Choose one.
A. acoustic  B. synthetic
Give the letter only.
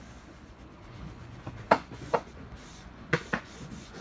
B